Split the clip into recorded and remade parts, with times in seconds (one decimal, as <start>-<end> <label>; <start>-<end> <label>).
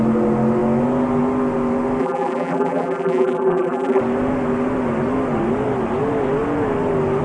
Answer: 0.0-2.0 recorded; 2.0-4.0 remade; 4.0-7.2 recorded